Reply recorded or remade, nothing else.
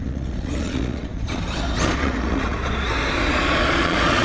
remade